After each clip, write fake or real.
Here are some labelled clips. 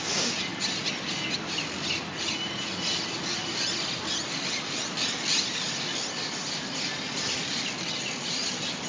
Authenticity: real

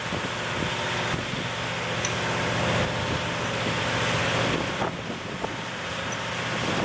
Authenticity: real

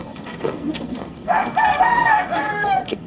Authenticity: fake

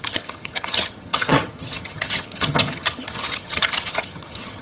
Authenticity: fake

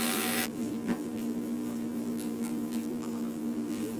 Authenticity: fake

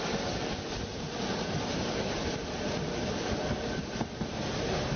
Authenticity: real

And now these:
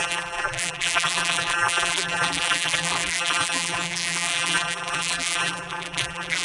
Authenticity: fake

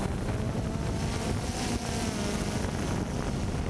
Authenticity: real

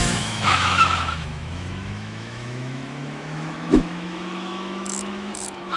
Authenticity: fake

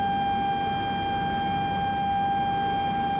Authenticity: real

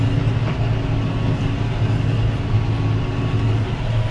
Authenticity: real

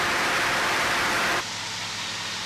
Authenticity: real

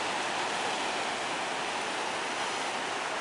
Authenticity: real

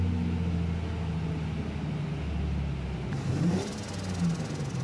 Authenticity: real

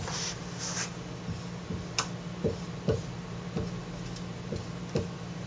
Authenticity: real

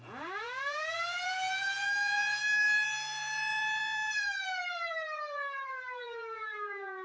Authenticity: fake